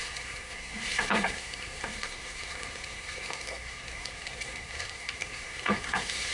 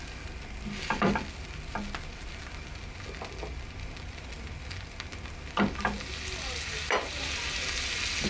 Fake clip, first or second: first